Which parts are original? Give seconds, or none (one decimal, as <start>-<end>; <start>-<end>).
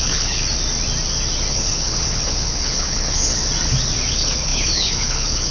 0.4-1.5; 3.4-4.1